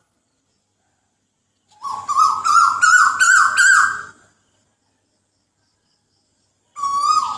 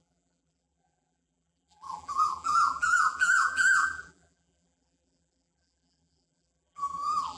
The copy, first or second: second